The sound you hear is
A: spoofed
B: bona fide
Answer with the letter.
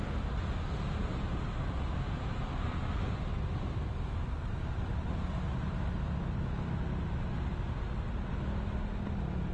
B